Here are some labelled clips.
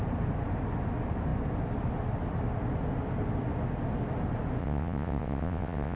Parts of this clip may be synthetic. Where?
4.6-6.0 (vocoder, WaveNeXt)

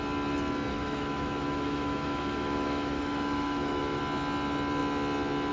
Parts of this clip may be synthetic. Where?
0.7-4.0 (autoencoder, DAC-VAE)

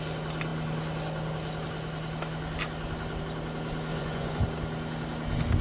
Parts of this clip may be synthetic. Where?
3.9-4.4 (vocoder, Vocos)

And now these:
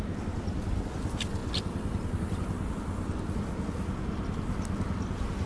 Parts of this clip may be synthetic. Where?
none